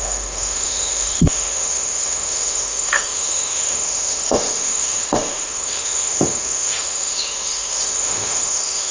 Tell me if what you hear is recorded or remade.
remade